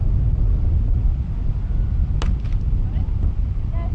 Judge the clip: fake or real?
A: real